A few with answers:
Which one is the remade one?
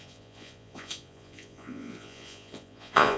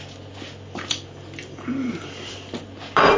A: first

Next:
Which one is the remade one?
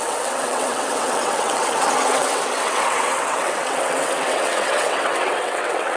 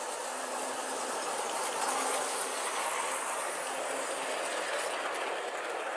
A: first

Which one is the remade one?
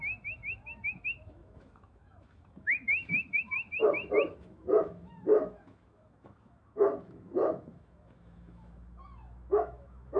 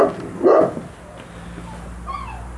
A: first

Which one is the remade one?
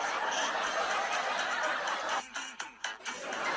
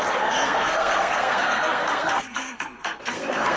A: second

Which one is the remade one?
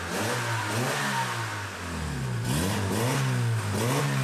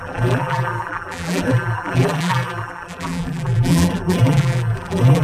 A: second